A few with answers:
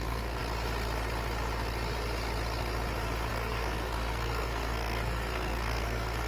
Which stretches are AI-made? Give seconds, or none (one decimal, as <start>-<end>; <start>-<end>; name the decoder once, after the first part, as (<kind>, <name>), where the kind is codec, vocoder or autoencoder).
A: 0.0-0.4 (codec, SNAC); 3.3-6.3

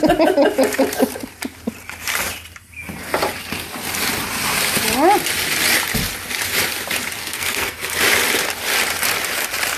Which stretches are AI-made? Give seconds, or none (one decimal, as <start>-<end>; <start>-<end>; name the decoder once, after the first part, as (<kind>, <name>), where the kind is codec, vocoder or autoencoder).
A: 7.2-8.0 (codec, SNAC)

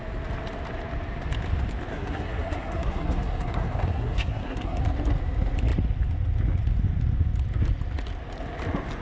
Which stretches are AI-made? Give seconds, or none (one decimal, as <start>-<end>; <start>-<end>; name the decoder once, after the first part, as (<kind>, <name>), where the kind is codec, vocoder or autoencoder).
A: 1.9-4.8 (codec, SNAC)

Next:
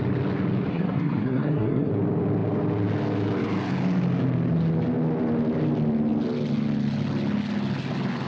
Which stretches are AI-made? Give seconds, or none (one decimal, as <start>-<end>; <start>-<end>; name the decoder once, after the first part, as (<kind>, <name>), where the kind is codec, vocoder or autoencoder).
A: 0.7-1.9 (codec, SNAC)